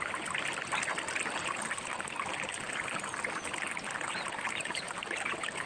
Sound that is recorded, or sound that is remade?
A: recorded